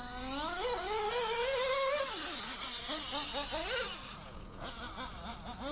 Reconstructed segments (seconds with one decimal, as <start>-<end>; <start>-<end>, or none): 4.1-4.8